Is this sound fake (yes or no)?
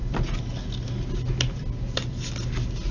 no